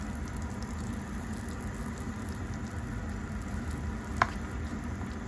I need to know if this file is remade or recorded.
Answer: recorded